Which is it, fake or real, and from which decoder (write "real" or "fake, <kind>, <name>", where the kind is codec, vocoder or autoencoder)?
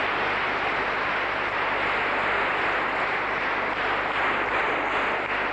real